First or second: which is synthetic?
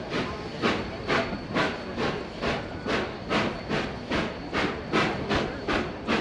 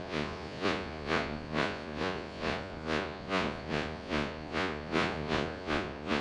second